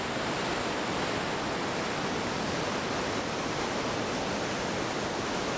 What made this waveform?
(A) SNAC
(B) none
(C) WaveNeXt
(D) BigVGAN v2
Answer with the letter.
B